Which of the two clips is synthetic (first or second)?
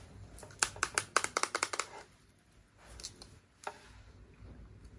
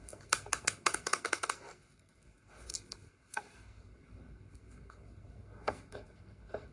second